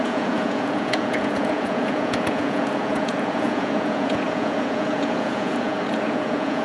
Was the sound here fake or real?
fake